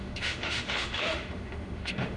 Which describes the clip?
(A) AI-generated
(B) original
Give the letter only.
A